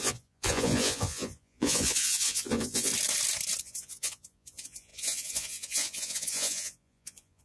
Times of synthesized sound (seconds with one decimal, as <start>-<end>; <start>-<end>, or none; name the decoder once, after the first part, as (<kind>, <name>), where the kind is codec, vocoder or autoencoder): 0.0-2.9 (vocoder, Vocos); 3.6-7.4